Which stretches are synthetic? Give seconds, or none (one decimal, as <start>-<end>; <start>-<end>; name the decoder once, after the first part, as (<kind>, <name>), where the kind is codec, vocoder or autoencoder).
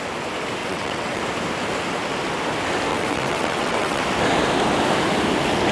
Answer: 0.6-1.2 (vocoder, WaveNeXt); 2.9-4.0